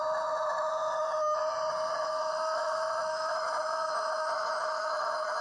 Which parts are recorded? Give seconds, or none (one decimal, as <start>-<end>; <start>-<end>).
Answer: 0.0-2.0